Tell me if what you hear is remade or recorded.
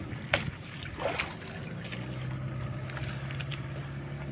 recorded